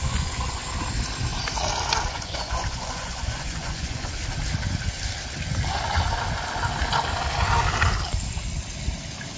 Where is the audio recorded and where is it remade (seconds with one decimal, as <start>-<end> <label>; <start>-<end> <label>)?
0.0-0.6 remade; 0.6-2.1 recorded; 2.1-4.2 remade; 4.2-9.4 recorded